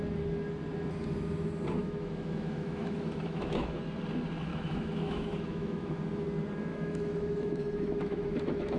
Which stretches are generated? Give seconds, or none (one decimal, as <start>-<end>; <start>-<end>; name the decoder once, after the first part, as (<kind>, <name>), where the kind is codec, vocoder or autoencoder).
1.8-3.8 (autoencoder, DAC-VAE); 4.5-6.0; 6.7-8.8